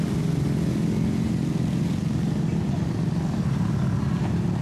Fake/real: real